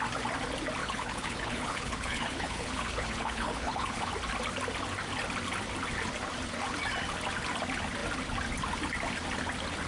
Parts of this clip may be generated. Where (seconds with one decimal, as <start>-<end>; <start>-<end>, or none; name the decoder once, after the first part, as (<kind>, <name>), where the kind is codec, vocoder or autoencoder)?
0.8-4.1 (codec, HILCodec)